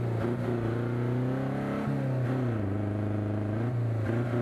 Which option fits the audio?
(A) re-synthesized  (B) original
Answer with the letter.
B